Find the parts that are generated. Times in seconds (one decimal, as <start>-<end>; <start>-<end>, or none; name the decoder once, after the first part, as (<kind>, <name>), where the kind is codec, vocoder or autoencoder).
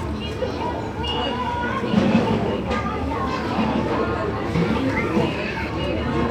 1.0-4.0 (codec, DAC); 4.6-5.7